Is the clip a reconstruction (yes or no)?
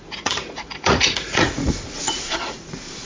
yes